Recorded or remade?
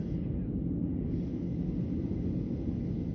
recorded